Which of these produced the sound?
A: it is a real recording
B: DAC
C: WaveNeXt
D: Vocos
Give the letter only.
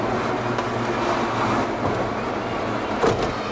A